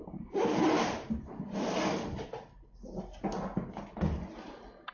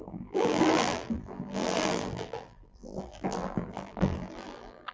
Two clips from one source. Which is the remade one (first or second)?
second